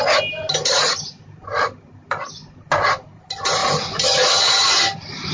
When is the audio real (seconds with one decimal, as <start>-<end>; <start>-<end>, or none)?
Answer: 0.0-5.3